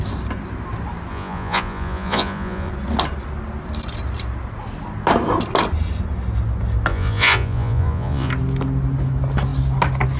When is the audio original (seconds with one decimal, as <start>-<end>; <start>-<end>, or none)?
0.0-1.1; 2.7-6.9; 8.3-10.2